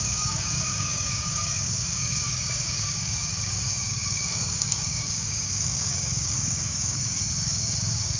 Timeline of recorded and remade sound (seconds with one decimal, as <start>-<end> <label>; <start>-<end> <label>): 0.0-8.2 remade

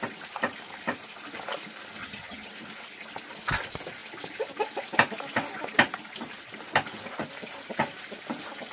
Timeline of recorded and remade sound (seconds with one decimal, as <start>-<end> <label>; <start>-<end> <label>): 0.0-2.0 recorded; 2.0-2.5 remade; 2.5-8.7 recorded

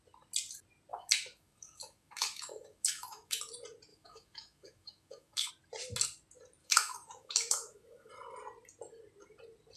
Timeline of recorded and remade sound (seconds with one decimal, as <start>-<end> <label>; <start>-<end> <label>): 0.0-0.9 recorded; 0.9-3.4 remade; 3.4-3.9 recorded; 3.9-5.5 remade; 5.5-6.6 recorded; 6.6-8.1 remade; 8.1-9.8 recorded

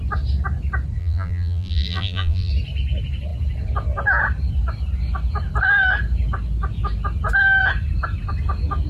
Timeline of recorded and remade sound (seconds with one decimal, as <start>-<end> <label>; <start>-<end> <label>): 0.0-1.0 recorded; 1.0-2.5 remade; 2.5-8.9 recorded